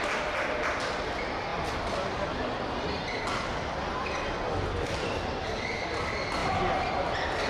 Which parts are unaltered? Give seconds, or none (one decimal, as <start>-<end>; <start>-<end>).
0.0-7.5